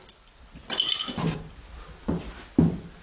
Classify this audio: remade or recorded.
recorded